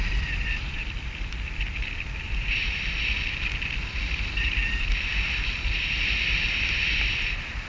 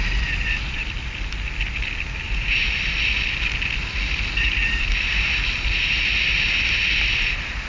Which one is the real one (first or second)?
second